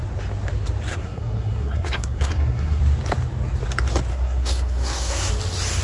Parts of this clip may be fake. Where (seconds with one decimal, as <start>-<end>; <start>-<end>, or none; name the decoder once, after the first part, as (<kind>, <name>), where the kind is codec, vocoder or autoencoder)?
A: 0.9-2.8 (codec, SNAC); 4.1-5.3